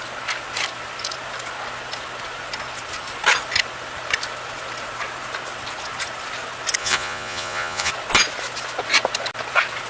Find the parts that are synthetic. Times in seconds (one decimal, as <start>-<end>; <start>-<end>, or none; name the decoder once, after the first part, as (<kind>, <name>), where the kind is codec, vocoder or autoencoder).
6.8-7.9 (vocoder, Vocos)